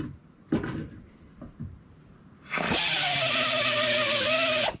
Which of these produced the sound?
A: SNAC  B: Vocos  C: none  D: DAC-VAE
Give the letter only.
C